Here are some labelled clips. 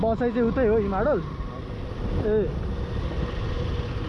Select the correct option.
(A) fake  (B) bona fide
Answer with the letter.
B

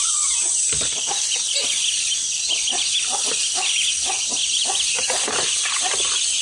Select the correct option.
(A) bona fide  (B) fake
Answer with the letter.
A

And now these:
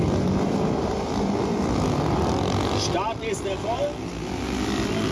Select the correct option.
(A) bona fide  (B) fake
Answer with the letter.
A